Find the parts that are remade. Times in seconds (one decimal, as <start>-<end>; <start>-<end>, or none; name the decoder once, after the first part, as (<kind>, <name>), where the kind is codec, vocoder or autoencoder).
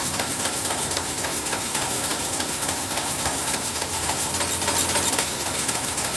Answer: 0.0-4.3 (codec, SNAC); 5.1-6.2